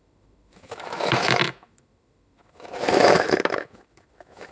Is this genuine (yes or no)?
no